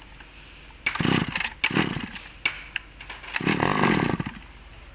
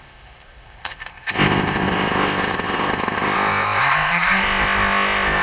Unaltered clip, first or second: first